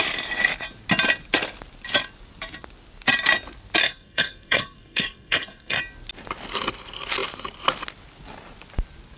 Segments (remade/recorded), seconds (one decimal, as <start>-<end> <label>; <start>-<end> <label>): 0.0-3.8 recorded; 3.8-5.8 remade; 5.8-9.2 recorded